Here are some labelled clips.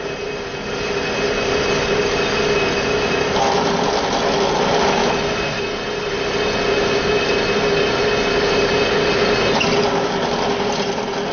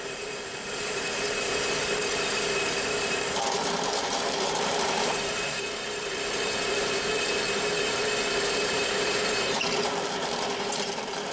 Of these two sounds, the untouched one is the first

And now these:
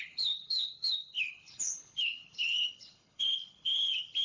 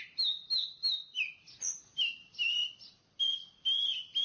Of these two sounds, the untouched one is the second